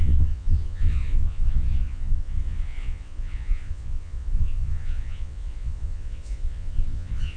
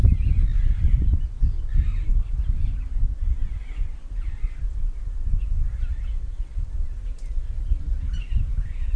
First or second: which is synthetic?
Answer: first